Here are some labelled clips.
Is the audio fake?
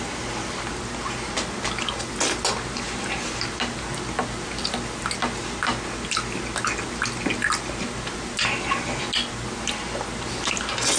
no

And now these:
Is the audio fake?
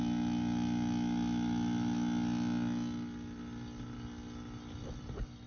no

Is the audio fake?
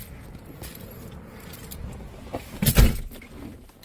no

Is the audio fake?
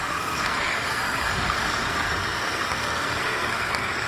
yes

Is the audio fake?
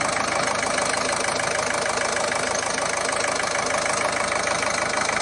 no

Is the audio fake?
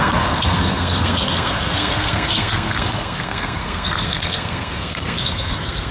yes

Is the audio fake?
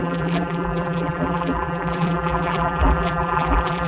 yes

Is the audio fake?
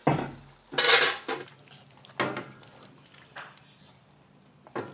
no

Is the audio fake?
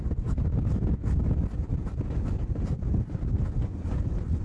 no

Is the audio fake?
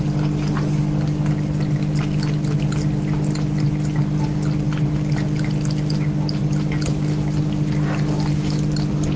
no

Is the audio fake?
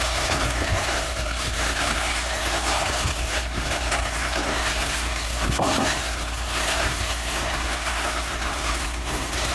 yes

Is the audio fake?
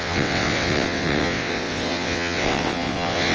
yes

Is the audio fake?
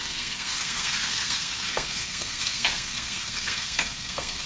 yes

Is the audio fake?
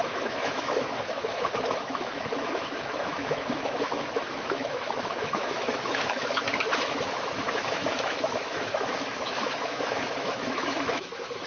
yes